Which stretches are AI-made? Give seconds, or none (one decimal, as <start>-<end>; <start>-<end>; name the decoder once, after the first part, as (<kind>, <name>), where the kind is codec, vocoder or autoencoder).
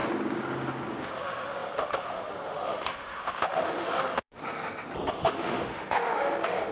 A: 1.0-4.4 (autoencoder, DAC-VAE); 5.1-6.7